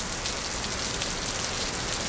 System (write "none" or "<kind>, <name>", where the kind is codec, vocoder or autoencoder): none